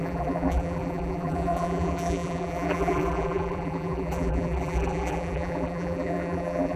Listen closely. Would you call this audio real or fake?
fake